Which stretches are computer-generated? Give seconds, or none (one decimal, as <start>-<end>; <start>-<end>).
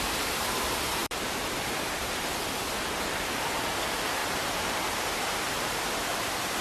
0.0-2.3; 3.0-4.2; 4.9-6.6